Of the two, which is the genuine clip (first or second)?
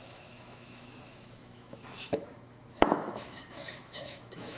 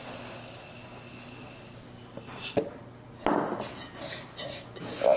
second